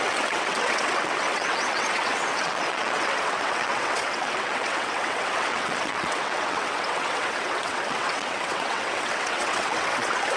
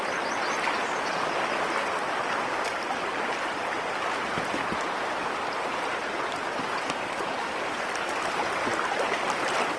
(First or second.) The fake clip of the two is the first